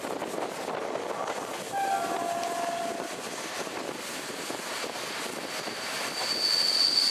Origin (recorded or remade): recorded